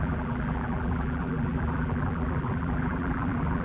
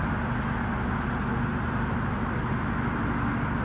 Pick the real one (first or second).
second